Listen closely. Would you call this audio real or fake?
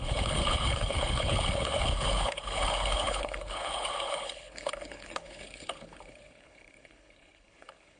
fake